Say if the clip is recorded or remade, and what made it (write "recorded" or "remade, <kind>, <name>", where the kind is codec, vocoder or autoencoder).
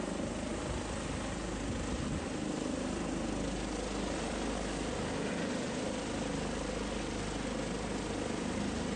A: recorded